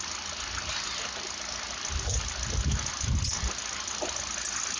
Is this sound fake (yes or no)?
no